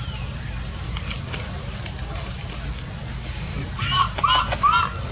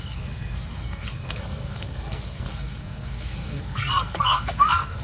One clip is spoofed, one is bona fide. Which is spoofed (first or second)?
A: second